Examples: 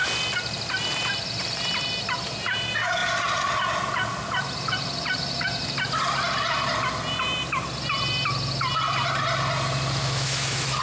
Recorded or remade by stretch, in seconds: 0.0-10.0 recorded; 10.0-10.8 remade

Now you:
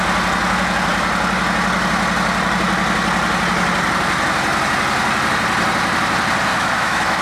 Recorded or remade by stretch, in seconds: 0.0-6.5 recorded; 6.5-7.2 remade